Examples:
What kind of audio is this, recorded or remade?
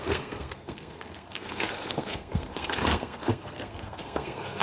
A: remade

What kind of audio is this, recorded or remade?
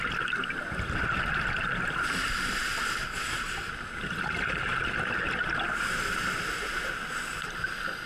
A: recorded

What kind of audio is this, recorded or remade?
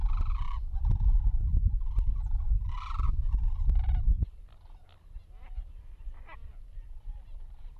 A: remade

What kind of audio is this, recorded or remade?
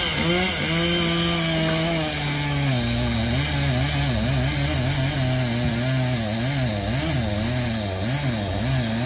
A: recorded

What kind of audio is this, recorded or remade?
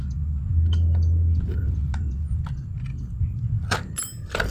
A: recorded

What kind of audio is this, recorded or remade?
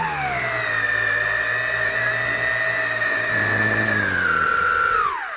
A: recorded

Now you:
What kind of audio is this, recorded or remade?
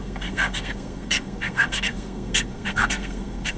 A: remade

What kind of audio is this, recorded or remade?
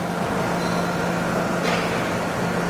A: recorded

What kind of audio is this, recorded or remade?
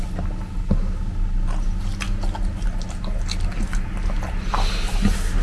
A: recorded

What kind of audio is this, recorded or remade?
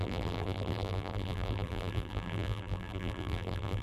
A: remade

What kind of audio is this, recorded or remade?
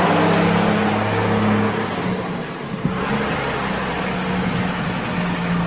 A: recorded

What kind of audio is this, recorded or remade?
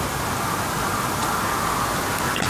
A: recorded